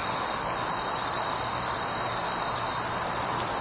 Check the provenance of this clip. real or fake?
real